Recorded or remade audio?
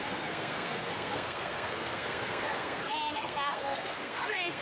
remade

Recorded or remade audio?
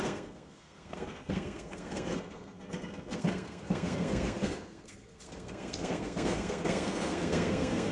remade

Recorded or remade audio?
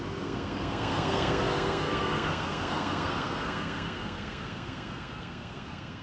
remade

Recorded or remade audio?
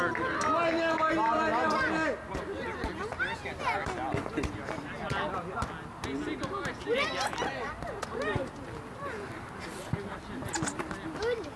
recorded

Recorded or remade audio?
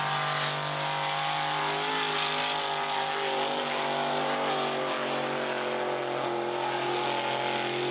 recorded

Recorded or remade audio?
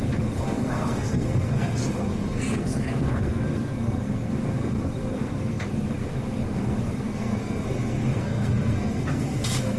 remade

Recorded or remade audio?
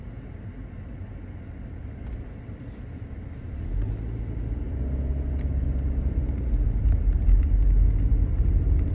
recorded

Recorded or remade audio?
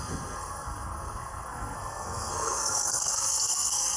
remade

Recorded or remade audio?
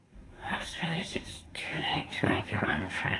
remade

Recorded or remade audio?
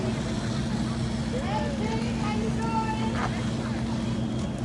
recorded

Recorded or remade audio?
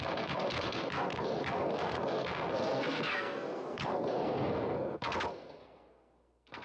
remade